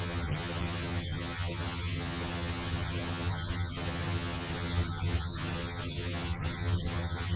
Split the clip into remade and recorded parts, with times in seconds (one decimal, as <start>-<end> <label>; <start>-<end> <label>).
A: 0.0-7.4 remade